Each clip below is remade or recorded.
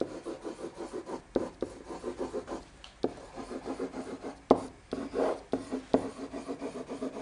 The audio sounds recorded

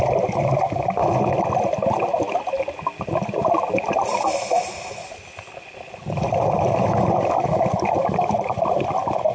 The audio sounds recorded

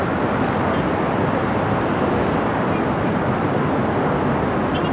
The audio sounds recorded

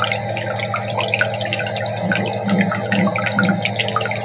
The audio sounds recorded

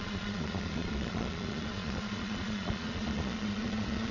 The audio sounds remade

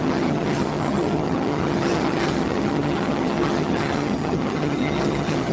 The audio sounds remade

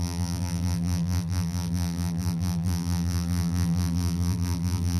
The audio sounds remade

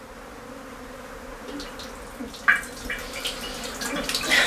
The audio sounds recorded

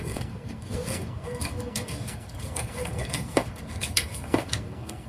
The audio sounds remade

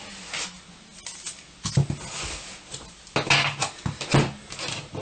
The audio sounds recorded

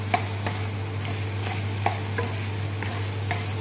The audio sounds recorded